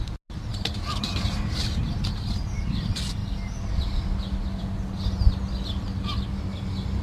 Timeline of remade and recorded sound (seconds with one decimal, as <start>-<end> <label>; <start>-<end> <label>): 0.0-0.5 recorded; 0.5-2.1 remade; 2.1-7.0 recorded